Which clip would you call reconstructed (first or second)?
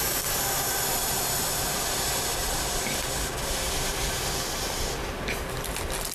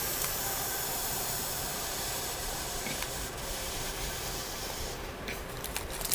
second